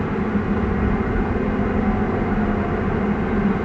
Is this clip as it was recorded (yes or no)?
yes